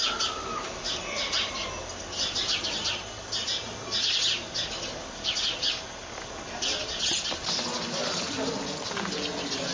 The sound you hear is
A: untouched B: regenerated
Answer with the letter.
A